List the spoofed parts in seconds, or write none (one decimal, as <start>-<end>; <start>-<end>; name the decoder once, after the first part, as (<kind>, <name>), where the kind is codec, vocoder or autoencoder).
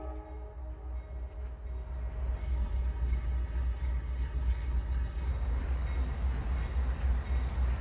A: 2.4-5.3 (codec, HILCodec)